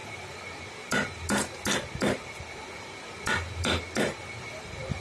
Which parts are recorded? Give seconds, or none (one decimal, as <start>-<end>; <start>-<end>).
0.0-5.0